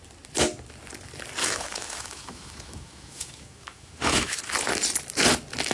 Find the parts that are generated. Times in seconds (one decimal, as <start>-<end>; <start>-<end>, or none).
1.4-4.4